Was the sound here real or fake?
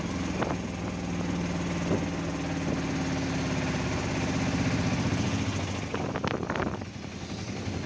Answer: real